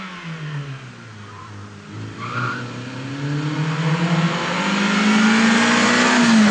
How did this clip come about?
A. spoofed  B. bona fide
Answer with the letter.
B